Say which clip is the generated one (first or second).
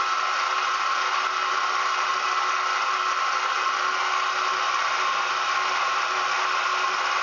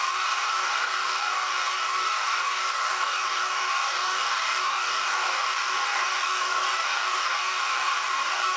second